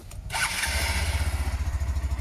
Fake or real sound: real